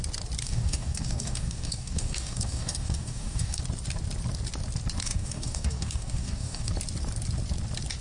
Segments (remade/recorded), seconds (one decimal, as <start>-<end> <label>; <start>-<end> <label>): 0.0-0.4 recorded; 0.4-3.6 remade; 3.6-5.0 recorded; 5.0-6.7 remade; 6.7-8.0 recorded